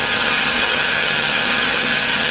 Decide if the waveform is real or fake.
fake